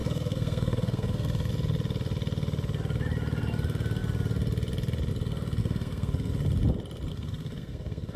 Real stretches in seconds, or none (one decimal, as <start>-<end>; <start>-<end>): 1.5-5.6; 6.3-7.1